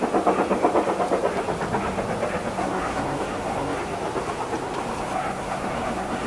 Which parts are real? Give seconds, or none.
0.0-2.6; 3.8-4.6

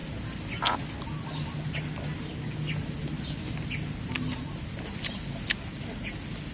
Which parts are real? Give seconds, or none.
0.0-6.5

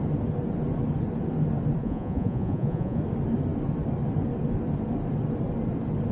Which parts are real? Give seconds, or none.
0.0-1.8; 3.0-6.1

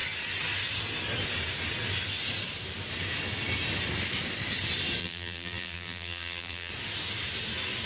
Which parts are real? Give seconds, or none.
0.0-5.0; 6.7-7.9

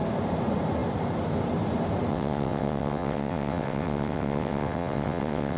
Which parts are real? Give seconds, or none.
0.0-2.1